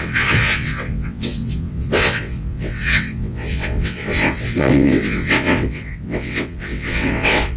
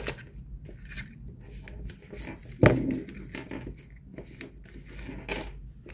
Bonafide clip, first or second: second